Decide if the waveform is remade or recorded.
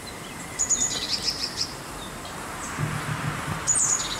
remade